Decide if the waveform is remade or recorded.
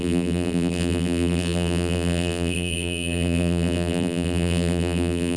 remade